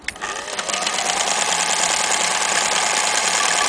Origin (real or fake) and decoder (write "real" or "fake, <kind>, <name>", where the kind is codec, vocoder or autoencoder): real